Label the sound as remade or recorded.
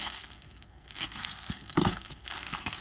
remade